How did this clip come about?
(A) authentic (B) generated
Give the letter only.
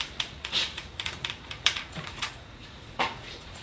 B